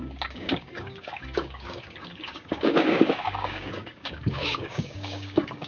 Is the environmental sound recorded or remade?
remade